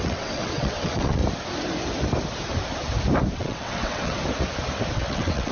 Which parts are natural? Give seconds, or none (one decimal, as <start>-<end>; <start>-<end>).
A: 1.2-3.3; 4.2-4.9